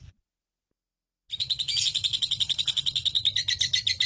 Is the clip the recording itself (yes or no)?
yes